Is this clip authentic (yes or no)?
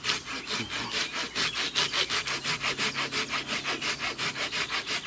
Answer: yes